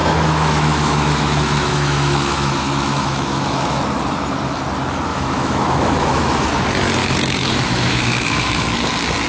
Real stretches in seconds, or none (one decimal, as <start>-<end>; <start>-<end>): 3.8-5.1; 6.5-7.0; 8.6-9.3

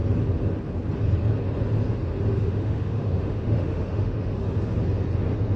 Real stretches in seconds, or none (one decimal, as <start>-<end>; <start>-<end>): 0.0-2.3; 4.4-5.6